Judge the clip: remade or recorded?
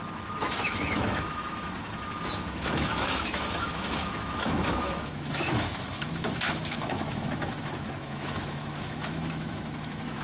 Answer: remade